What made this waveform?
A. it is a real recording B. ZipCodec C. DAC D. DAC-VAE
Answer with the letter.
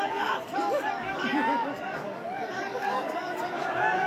C